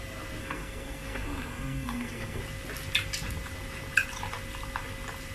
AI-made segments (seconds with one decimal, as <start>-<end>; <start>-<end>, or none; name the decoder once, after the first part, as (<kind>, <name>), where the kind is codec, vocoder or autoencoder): 0.4-2.4 (codec, SNAC)

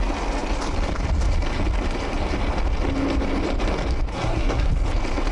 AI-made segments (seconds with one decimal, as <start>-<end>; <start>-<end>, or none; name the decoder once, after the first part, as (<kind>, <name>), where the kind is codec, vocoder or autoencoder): 4.1-4.7 (codec, SNAC)